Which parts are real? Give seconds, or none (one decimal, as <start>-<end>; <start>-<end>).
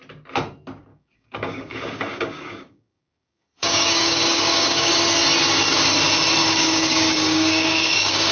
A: 0.0-0.9; 5.0-6.4